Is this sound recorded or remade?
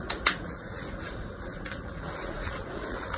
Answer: remade